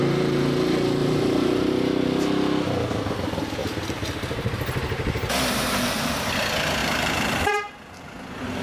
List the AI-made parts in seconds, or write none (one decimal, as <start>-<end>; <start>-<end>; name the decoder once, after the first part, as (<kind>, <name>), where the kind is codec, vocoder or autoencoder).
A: 1.0-1.7 (vocoder, BigVGAN v2); 3.6-6.3; 6.8-7.4